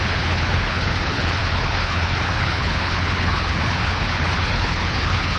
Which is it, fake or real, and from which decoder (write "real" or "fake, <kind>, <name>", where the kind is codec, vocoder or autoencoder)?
fake, codec, HILCodec